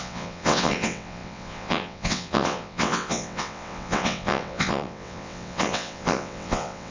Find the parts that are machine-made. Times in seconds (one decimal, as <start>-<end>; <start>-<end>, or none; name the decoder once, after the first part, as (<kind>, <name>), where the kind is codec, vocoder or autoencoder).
0.0-6.9 (vocoder, WaveNeXt)